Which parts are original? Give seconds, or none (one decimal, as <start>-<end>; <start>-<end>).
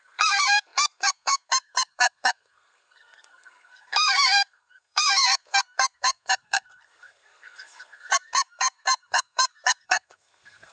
none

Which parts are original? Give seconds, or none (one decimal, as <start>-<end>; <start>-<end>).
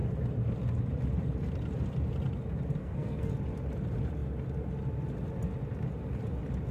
0.0-2.8; 3.3-6.7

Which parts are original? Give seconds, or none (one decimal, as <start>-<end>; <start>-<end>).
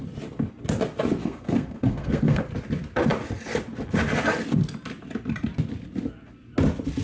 0.0-1.2; 2.4-7.0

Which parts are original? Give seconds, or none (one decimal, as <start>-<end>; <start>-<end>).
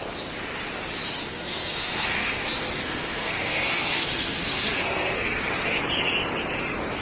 0.0-1.2; 5.4-7.0